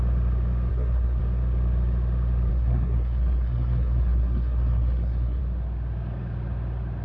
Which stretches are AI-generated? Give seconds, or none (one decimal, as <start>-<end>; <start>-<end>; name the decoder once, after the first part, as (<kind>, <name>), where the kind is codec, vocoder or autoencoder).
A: 0.7-1.2 (codec, SNAC); 2.5-5.4